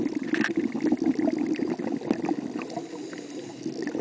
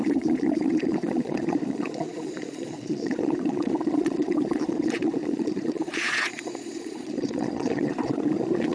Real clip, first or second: first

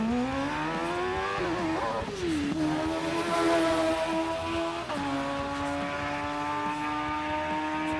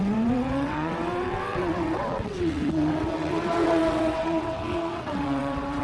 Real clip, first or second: first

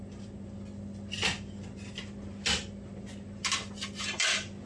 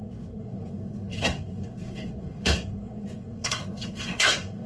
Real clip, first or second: first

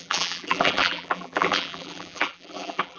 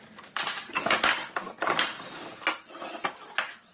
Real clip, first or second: second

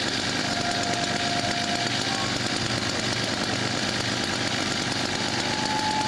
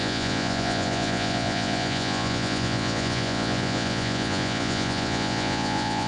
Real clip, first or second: first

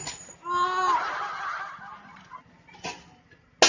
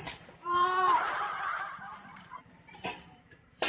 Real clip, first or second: first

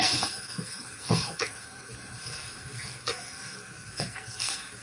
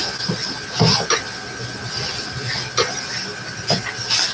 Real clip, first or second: second